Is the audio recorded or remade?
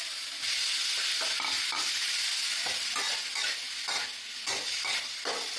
recorded